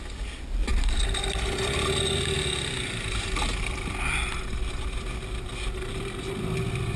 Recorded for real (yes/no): yes